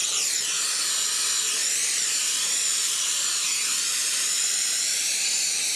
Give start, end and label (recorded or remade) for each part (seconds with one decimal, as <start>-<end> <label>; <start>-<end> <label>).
0.0-0.8 remade; 0.8-1.6 recorded; 1.6-3.4 remade; 3.4-4.0 recorded; 4.0-5.8 remade